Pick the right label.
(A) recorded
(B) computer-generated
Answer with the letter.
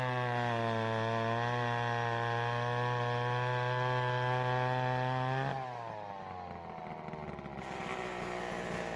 A